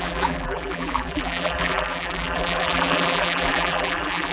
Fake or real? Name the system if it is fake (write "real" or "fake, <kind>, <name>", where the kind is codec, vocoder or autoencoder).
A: fake, vocoder, BigVGAN v2